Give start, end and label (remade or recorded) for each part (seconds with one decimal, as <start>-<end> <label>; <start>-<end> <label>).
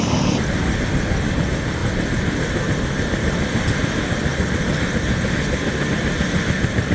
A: 0.0-6.9 recorded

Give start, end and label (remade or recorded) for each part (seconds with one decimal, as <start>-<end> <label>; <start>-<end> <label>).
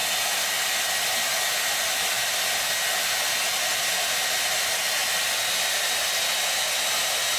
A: 0.0-7.4 recorded